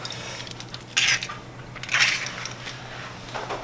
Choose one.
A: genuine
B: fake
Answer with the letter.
A